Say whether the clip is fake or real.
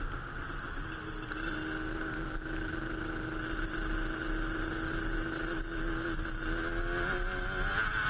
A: real